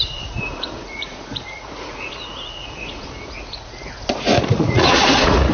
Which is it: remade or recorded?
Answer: remade